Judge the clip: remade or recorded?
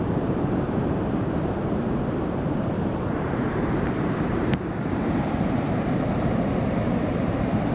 remade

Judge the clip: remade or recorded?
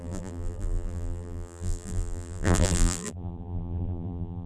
remade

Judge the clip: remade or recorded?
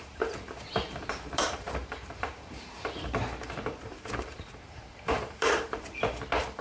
remade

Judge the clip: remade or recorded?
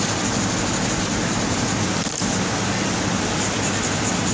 recorded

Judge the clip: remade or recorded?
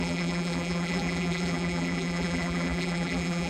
remade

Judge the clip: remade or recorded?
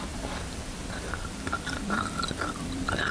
remade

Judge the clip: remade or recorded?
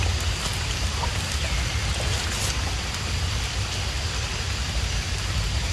remade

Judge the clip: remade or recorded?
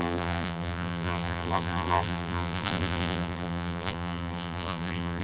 remade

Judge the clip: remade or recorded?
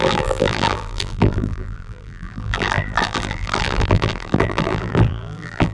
remade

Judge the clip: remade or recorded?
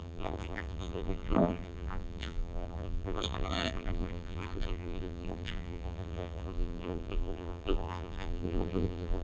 remade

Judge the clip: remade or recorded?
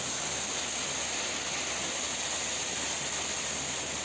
recorded